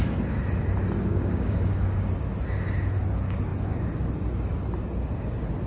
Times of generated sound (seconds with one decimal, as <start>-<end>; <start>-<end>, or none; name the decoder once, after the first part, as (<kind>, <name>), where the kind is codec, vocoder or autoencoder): 1.1-2.1 (codec, DAC)